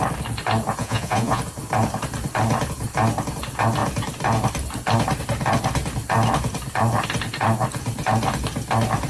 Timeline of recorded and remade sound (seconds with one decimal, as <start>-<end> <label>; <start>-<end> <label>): 0.0-0.8 recorded; 0.8-1.4 remade; 1.4-9.1 recorded